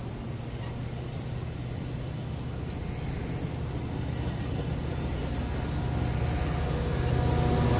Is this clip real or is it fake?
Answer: real